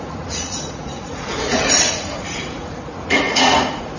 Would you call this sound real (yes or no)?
no